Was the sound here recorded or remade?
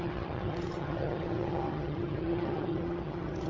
remade